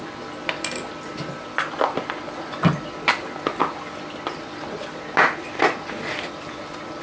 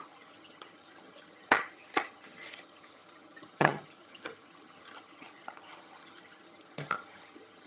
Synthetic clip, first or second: second